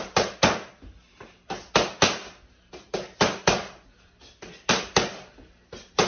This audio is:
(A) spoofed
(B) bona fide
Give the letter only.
B